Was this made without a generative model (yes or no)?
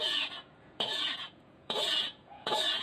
no